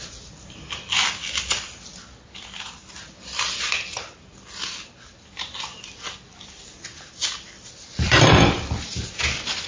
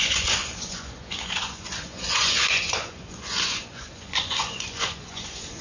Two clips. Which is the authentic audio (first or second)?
first